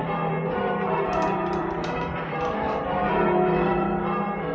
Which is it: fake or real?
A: fake